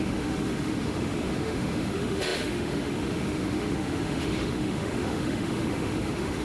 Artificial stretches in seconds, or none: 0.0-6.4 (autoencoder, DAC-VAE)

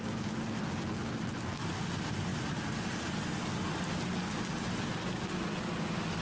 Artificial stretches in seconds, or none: none